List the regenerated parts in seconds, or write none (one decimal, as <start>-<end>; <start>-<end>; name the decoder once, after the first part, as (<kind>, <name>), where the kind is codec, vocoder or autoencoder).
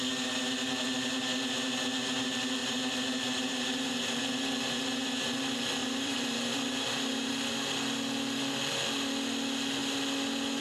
2.6-4.2 (vocoder, BigVGAN v2); 5.8-7.3